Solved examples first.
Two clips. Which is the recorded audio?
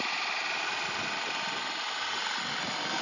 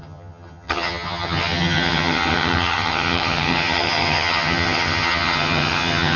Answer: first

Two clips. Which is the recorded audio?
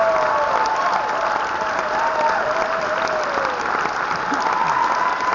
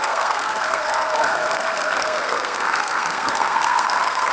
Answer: first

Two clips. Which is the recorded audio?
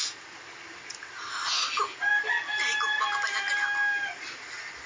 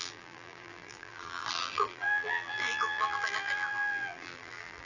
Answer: first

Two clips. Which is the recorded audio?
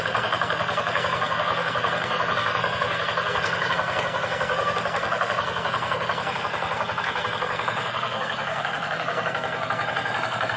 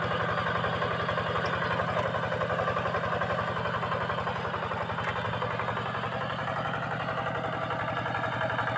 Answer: second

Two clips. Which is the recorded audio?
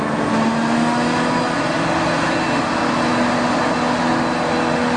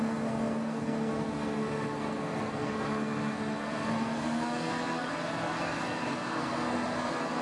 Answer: first